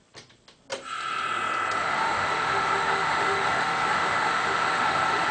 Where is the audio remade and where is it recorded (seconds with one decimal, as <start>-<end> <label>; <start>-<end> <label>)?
0.0-1.8 recorded; 1.8-5.3 remade